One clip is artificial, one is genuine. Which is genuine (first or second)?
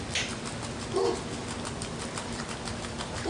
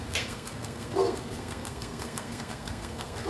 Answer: first